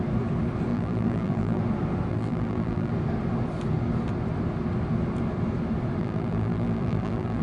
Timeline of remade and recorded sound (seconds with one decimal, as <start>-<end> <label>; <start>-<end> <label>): 0.0-0.7 recorded; 0.7-1.6 remade; 1.6-2.1 recorded; 2.1-2.9 remade; 2.9-6.0 recorded; 6.0-7.4 remade